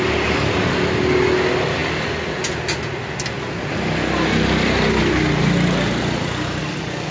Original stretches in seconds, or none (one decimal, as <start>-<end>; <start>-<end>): 0.0-7.1